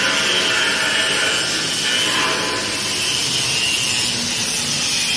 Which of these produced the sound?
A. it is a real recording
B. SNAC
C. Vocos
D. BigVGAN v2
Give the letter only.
A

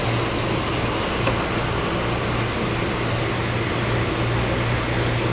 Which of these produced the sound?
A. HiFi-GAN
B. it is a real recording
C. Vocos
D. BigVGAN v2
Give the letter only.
B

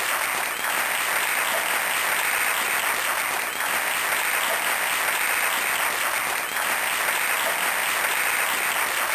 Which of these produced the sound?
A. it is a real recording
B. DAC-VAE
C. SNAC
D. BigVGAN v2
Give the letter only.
A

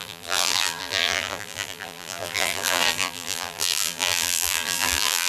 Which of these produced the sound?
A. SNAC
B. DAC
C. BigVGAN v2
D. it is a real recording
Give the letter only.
C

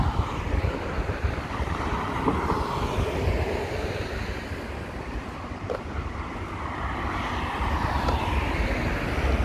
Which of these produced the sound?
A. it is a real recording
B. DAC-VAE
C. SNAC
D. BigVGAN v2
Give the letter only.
A